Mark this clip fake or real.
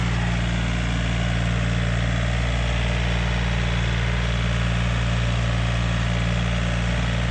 real